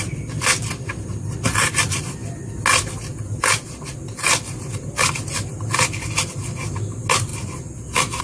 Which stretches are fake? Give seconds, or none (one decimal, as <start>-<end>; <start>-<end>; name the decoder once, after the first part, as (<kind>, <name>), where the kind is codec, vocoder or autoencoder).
none